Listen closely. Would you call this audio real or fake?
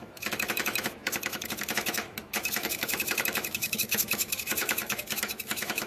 fake